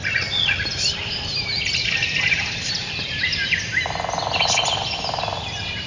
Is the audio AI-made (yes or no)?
no